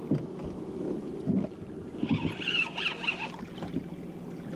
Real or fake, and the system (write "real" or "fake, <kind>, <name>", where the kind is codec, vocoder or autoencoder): real